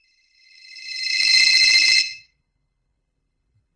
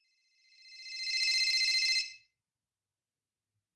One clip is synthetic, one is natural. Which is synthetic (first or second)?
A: first